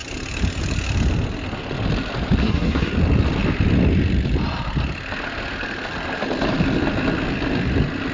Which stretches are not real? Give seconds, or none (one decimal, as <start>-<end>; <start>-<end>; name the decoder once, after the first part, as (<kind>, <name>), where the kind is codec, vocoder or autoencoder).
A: 2.4-2.9 (codec, SNAC)